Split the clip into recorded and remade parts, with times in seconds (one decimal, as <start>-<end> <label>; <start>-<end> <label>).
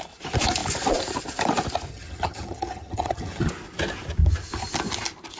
0.0-1.9 recorded; 1.9-3.5 remade; 3.5-5.4 recorded